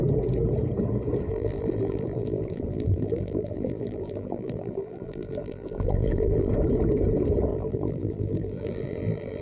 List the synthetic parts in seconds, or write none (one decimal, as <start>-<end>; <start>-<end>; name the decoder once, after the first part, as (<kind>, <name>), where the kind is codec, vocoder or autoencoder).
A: 1.3-6.5 (vocoder, BigVGAN v2); 7.5-9.4